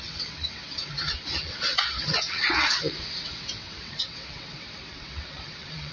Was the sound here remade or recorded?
remade